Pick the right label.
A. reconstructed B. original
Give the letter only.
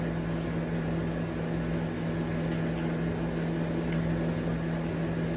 B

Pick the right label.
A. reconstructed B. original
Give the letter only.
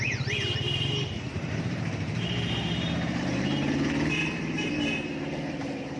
A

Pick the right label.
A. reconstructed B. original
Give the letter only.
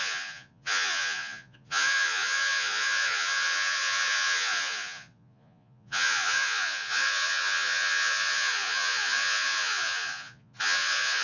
A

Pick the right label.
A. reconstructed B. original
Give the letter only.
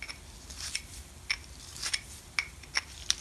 B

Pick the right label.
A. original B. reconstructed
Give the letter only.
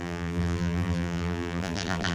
B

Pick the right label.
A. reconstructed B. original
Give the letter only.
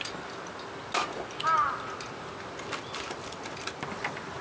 B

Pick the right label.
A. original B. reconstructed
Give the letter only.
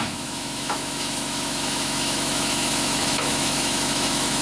B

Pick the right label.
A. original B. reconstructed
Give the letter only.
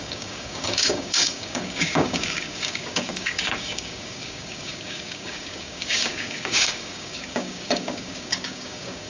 B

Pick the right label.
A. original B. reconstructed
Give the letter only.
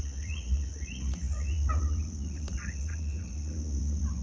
B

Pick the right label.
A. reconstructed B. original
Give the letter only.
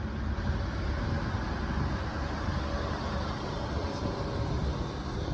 B